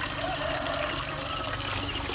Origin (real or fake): real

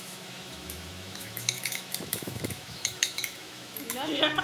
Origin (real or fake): fake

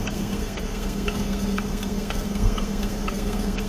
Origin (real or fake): fake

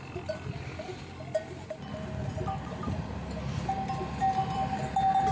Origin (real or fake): real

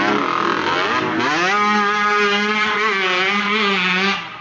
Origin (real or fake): real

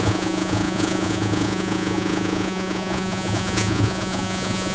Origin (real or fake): fake